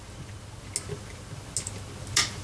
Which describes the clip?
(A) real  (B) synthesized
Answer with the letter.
A